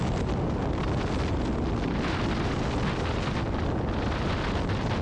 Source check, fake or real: real